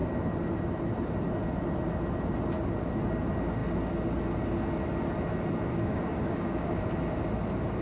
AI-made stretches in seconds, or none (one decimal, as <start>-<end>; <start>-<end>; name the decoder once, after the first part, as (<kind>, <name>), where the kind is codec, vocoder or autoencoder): 5.7-6.7 (codec, DAC)